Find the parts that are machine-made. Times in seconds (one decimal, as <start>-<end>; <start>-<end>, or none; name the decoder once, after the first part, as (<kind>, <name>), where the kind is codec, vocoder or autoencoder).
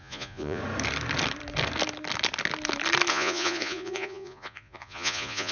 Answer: 0.0-0.6 (vocoder, Vocos); 3.1-5.5